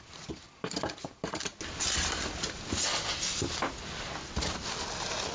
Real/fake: real